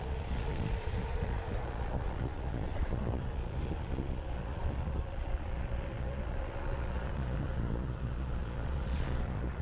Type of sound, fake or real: fake